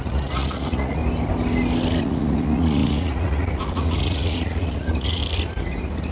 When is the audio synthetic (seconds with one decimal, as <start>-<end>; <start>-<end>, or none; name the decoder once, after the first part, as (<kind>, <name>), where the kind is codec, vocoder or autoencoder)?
0.0-1.0 (vocoder, Vocos); 2.0-5.2